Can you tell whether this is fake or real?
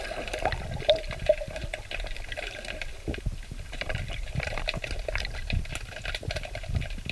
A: fake